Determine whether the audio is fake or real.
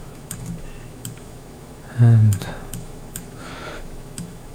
fake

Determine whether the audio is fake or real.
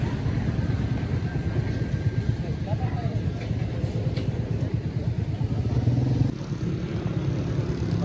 real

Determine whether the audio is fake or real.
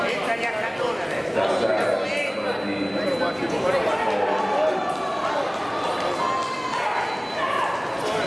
real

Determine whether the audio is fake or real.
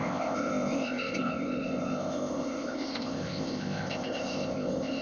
fake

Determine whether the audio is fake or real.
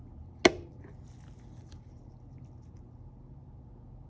real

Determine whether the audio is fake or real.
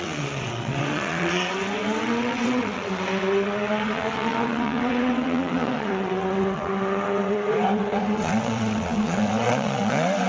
fake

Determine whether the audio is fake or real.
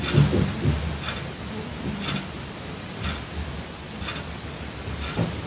real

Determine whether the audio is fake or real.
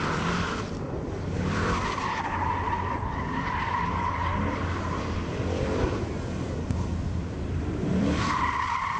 fake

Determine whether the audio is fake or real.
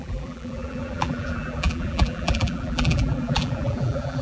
fake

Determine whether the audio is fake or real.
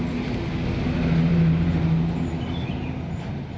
real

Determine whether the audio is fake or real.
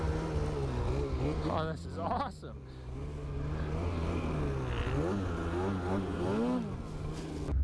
real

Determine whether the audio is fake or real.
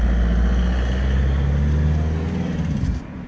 real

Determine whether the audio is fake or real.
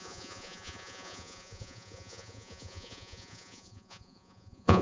fake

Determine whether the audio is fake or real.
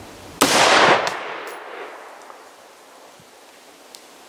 real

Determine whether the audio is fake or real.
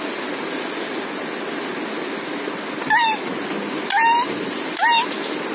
real